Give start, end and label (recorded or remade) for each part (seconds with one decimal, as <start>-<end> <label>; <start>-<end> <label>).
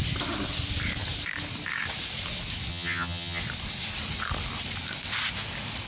0.0-2.7 recorded; 2.7-3.4 remade; 3.4-5.9 recorded